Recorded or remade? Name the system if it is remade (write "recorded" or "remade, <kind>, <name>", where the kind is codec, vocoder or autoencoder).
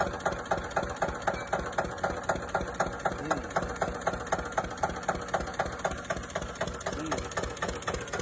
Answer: recorded